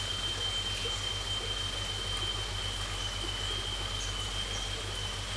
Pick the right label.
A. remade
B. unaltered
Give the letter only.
B